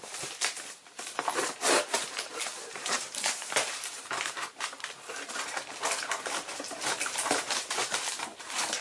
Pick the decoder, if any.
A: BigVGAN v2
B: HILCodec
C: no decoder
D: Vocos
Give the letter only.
A